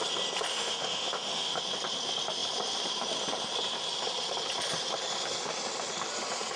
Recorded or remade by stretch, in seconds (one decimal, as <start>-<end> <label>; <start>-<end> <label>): 0.0-0.5 recorded; 0.5-1.6 remade; 1.6-6.6 recorded